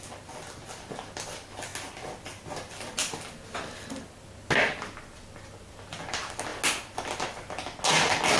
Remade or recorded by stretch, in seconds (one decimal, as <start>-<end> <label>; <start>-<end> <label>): 0.0-8.4 recorded